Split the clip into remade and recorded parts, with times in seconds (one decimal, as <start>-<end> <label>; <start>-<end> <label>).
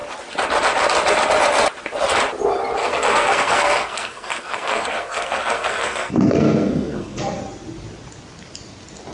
0.0-2.8 recorded; 2.8-7.4 remade; 7.4-9.1 recorded